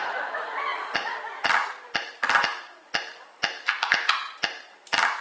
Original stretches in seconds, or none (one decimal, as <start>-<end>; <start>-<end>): 0.0-5.2